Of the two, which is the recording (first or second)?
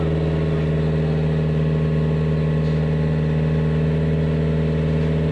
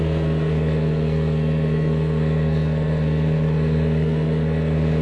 first